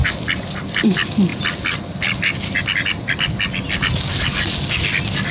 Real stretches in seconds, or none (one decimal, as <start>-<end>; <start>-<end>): 0.0-5.3